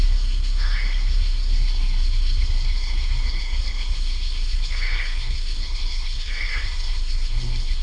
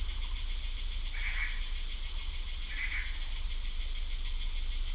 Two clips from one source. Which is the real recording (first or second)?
second